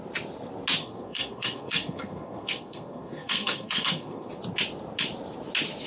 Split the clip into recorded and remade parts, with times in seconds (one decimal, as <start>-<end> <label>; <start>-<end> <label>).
0.0-0.8 recorded; 0.8-4.3 remade; 4.3-5.9 recorded

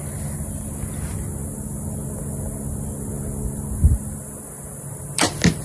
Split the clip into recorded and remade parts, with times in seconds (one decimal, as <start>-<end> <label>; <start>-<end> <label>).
0.0-5.6 recorded

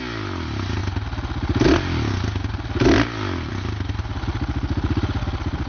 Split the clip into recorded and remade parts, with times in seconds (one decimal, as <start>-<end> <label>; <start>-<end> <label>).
0.0-5.7 recorded

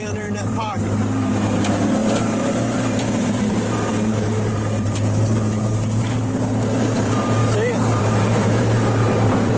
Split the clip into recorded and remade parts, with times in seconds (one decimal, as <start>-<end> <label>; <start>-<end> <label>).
0.0-7.4 remade; 7.4-8.0 recorded; 8.0-9.6 remade